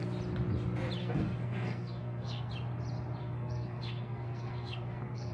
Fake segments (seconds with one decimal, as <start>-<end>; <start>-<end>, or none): 1.0-2.5; 3.2-5.3